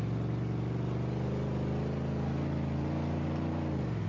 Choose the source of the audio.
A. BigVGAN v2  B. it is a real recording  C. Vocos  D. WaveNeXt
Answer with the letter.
A